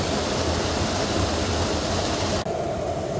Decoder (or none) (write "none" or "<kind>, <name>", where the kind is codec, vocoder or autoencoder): none